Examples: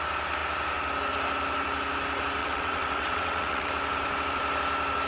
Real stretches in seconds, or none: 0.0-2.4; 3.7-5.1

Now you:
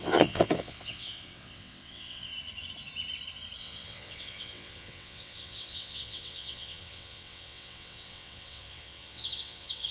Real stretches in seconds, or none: 2.3-3.6

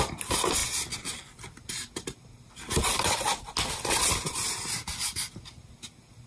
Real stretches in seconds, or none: 0.0-6.3